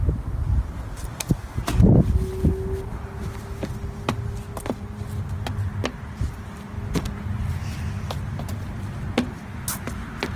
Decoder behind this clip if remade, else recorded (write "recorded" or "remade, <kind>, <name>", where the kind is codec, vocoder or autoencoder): recorded